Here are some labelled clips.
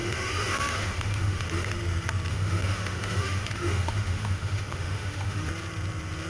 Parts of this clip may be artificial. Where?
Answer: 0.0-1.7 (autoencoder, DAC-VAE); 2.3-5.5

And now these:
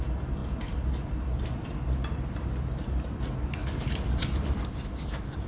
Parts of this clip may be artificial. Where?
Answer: 3.6-5.5 (vocoder, BigVGAN v2)

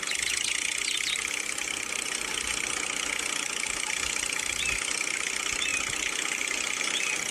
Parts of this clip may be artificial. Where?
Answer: none

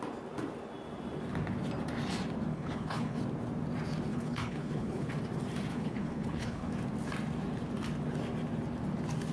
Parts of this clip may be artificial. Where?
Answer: 2.5-3.2 (codec, HILCodec); 4.1-5.1; 5.7-6.7

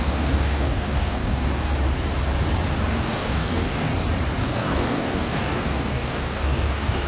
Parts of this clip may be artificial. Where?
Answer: 0.0-1.7 (codec, DAC); 2.9-3.9; 4.4-7.1

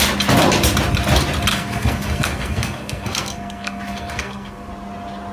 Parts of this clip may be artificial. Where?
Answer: 1.5-4.7 (codec, SNAC)

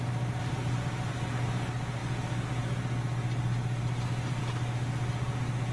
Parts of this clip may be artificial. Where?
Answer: none

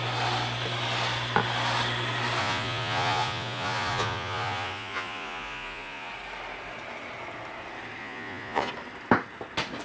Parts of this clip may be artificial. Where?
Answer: 2.4-6.1 (vocoder, Vocos); 8.0-8.7